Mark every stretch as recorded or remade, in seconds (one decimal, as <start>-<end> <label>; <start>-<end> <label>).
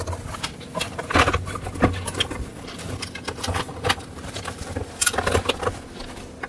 0.0-2.5 recorded; 2.5-4.4 remade; 4.4-6.5 recorded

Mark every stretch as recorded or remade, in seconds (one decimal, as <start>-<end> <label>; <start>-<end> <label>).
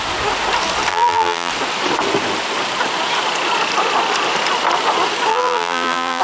0.0-0.9 recorded; 0.9-1.5 remade; 1.5-5.3 recorded; 5.3-6.2 remade